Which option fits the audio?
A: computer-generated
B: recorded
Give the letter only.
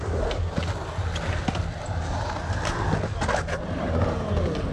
B